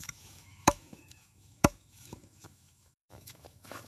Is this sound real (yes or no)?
no